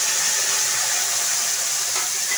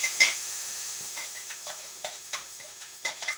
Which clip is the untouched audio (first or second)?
first